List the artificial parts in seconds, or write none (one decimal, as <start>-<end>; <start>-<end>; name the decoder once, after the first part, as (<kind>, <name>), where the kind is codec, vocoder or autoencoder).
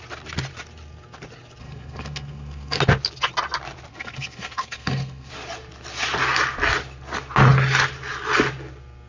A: 1.6-2.8 (codec, SNAC); 3.9-5.3